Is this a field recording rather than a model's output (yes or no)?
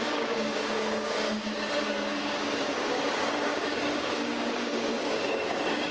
no